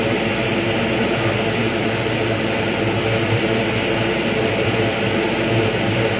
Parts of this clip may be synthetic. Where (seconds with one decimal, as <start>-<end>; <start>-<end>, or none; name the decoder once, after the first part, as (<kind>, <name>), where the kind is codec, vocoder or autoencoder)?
1.6-5.3 (vocoder, BigVGAN v2)